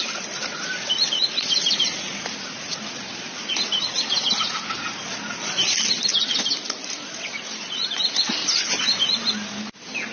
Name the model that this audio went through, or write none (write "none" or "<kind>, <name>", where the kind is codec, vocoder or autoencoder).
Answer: none